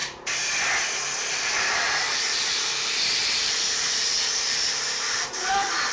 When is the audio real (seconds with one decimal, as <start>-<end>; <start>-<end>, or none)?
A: 0.0-1.3